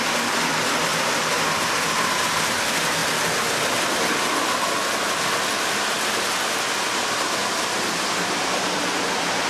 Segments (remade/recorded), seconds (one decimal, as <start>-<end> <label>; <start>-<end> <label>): 0.0-0.9 recorded; 0.9-2.2 remade; 2.2-7.4 recorded; 7.4-9.5 remade